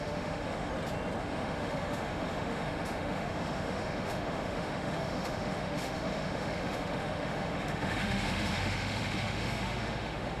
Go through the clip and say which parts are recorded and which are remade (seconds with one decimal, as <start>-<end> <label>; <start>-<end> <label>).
0.0-0.7 remade; 0.7-1.2 recorded; 1.2-10.4 remade